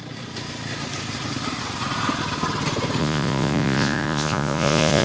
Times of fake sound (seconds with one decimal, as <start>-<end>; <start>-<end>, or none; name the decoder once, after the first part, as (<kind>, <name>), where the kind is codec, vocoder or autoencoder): 3.0-5.0 (vocoder, Vocos)